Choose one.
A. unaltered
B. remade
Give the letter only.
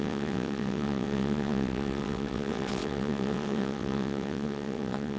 B